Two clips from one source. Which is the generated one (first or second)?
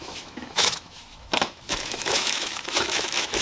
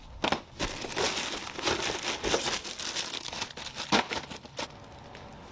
first